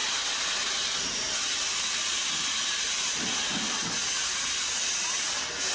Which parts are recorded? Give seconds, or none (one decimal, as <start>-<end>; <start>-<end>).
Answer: 0.7-5.7